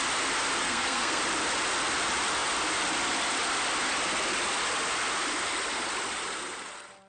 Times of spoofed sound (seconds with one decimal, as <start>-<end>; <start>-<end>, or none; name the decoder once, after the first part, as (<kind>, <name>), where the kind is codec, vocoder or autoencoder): 0.6-1.2 (codec, SNAC)